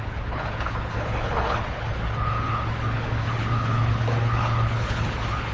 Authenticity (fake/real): fake